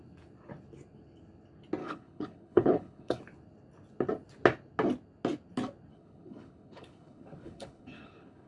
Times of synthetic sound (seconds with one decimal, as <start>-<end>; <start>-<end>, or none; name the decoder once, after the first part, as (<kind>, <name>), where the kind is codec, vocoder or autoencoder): 1.8-3.2 (codec, HILCodec); 5.9-8.5